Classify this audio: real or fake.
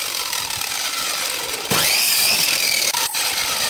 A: fake